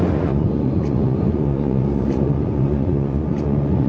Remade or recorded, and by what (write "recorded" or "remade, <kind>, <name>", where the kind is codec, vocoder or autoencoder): remade, vocoder, Vocos